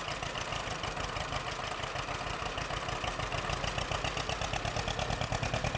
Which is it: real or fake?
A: real